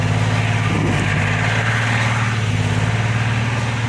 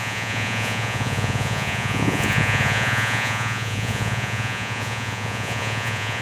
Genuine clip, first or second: first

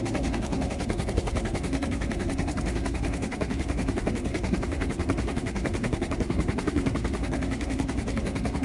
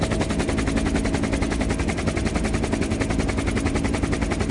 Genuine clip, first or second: second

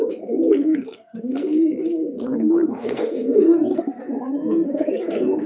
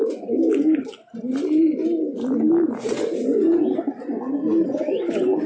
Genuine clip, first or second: second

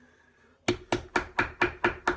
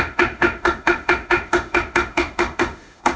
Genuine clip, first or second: first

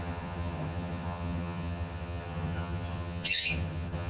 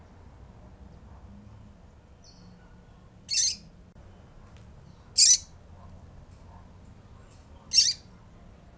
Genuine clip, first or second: second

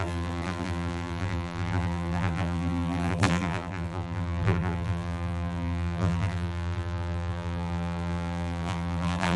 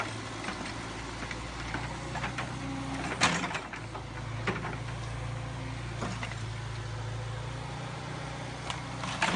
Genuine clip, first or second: second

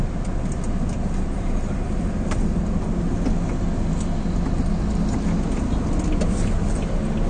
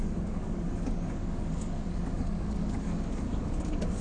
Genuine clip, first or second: first